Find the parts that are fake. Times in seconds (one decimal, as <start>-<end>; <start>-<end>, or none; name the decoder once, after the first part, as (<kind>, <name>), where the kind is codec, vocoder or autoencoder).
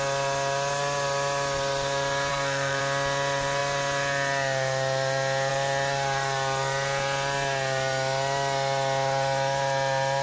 2.3-2.8 (codec, SNAC)